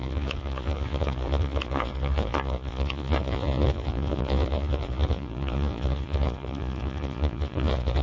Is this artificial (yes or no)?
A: yes